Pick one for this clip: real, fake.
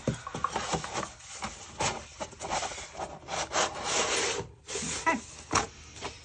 real